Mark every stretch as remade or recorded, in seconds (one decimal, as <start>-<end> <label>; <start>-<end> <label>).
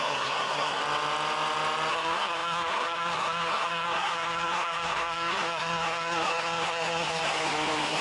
0.0-0.8 remade; 0.8-1.9 recorded; 1.9-8.0 remade